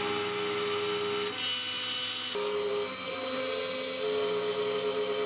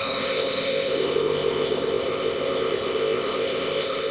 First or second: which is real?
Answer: first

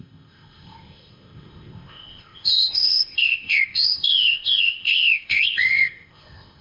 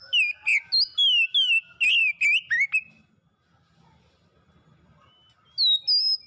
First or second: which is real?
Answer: second